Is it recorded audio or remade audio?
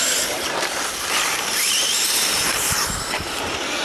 remade